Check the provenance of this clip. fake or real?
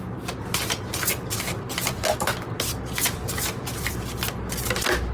real